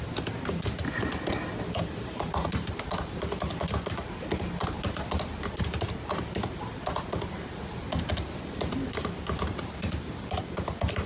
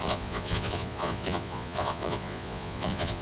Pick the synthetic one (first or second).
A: second